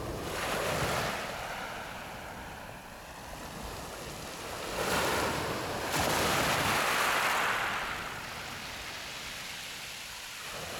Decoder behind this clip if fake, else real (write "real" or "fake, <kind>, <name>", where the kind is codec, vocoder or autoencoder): real